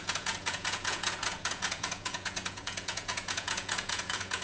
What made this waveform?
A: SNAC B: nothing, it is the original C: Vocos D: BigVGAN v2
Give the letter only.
C